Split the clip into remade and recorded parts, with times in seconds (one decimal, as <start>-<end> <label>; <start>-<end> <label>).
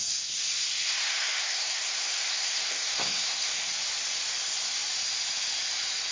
0.0-3.7 remade; 3.7-6.1 recorded